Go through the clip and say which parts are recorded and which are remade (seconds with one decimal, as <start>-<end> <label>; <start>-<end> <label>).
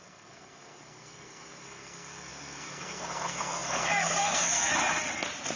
0.0-4.7 remade; 4.7-5.6 recorded